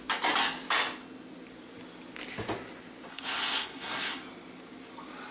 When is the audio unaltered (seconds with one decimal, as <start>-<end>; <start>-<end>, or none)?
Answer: 0.0-3.1; 4.2-5.3